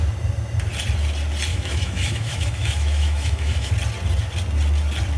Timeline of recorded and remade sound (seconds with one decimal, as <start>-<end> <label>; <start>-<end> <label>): 0.0-1.5 recorded; 1.5-3.7 remade; 3.7-5.2 recorded